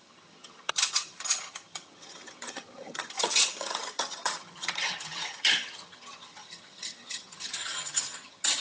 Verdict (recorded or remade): remade